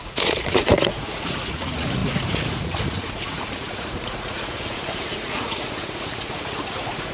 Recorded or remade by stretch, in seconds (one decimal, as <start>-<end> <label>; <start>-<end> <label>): 0.0-7.1 remade